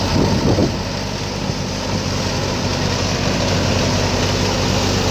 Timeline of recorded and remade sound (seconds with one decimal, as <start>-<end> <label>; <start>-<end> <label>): 0.0-5.1 recorded

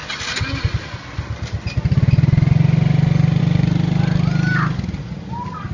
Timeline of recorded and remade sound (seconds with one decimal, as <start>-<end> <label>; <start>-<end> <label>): 0.0-5.7 recorded

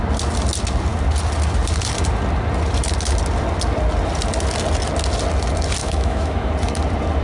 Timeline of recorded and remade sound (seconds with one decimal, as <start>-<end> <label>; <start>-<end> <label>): 0.0-5.8 recorded; 5.8-6.5 remade; 6.5-7.2 recorded

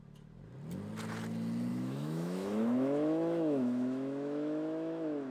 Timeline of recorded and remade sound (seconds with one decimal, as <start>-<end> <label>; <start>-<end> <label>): 0.0-1.7 recorded; 1.7-5.3 remade